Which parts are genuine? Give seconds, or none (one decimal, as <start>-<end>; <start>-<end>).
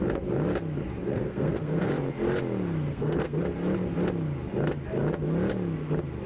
0.0-1.0; 1.9-2.9; 3.4-6.3